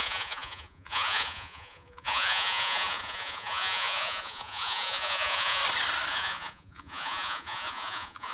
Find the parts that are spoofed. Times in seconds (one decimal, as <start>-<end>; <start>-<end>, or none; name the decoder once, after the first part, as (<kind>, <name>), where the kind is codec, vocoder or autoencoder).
0.0-5.6 (vocoder, Vocos); 6.1-8.3